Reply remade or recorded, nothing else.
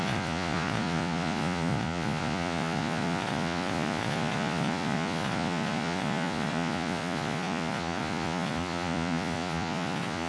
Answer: remade